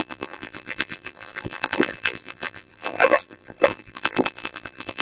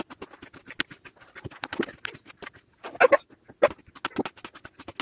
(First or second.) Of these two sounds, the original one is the second